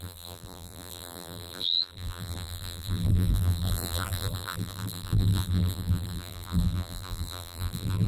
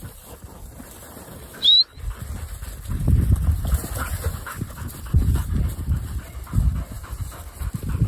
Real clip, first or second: second